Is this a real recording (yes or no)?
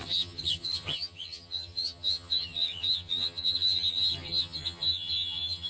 no